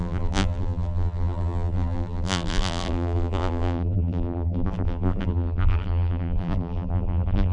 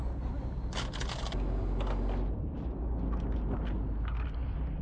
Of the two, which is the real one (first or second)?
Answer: second